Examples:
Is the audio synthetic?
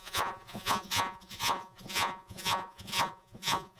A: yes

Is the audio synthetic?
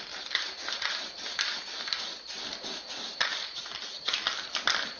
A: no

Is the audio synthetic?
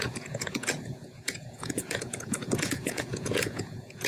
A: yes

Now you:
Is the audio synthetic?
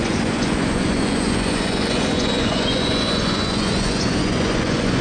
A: yes